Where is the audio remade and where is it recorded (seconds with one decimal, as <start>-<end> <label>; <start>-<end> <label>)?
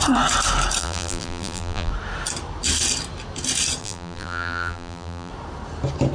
0.0-0.8 recorded; 0.8-1.9 remade; 1.9-3.8 recorded; 3.8-5.3 remade; 5.3-6.1 recorded